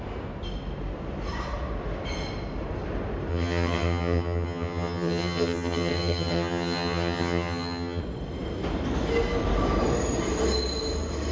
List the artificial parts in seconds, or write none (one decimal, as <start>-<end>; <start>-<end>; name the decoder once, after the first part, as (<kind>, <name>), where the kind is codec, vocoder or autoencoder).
3.3-8.0 (vocoder, HiFi-GAN)